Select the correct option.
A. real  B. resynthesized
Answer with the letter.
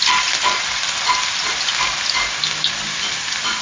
A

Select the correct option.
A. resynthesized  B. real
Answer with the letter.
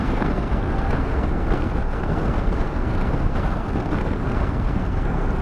A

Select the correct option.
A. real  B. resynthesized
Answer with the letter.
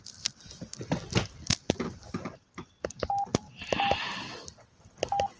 A